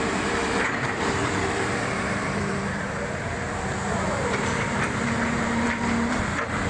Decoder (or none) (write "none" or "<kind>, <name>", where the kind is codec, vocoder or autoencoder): vocoder, BigVGAN v2